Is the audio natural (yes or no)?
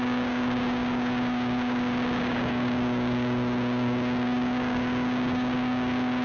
no